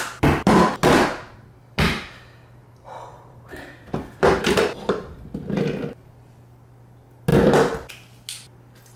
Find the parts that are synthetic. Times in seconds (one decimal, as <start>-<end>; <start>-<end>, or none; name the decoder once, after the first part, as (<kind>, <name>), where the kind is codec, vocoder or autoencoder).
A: 2.6-4.6 (vocoder, BigVGAN v2)